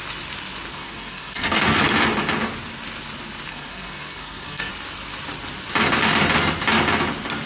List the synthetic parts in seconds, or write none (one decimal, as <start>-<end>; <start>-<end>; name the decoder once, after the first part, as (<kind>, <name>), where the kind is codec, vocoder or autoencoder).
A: 0.7-1.8 (codec, SNAC); 3.5-4.7